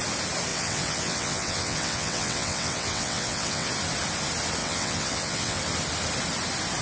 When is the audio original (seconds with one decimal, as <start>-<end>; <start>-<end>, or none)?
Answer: 0.0-0.5; 3.7-4.6; 5.6-6.8